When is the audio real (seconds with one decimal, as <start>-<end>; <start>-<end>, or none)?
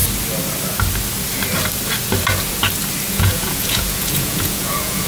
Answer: 0.0-3.1